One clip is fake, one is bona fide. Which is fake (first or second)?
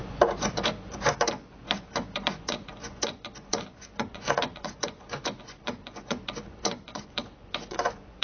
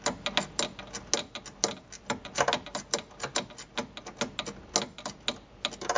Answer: first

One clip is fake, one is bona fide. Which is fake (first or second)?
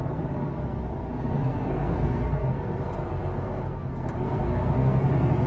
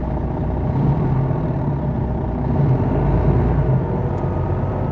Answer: first